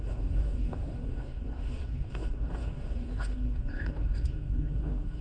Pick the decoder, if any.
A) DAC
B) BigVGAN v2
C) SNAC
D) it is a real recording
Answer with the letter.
A